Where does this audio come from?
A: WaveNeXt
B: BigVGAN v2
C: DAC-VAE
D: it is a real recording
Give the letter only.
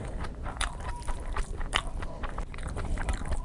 B